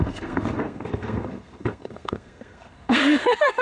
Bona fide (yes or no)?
no